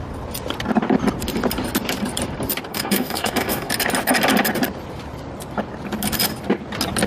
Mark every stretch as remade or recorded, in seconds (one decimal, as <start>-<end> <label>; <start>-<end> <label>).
0.0-2.7 recorded; 2.7-3.7 remade; 3.7-7.1 recorded